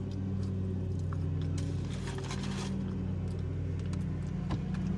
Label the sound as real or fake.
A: real